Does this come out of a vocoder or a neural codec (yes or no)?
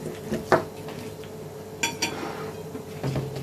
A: no